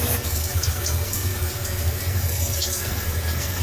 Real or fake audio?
fake